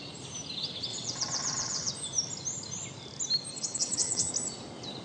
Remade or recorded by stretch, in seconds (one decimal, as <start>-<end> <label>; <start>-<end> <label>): 0.0-0.9 recorded; 0.9-1.9 remade; 1.9-3.5 recorded; 3.5-4.3 remade; 4.3-5.0 recorded